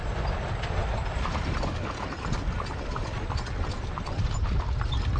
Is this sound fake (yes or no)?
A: no